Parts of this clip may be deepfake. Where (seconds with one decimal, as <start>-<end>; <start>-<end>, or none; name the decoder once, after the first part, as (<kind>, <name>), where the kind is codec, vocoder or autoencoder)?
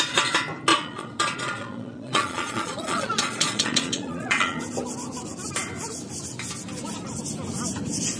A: 0.7-4.6 (vocoder, Vocos)